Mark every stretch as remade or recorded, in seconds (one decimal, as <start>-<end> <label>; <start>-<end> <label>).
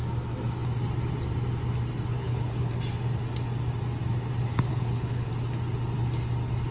0.0-2.2 recorded; 2.2-2.7 remade; 2.7-4.7 recorded; 4.7-5.3 remade; 5.3-6.7 recorded